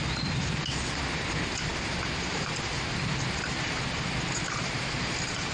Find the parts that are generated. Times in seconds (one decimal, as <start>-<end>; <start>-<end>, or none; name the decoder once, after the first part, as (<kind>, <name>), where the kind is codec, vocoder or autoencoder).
none